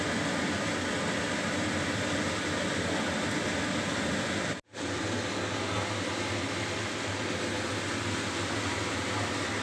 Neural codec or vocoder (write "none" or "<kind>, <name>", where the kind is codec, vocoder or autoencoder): none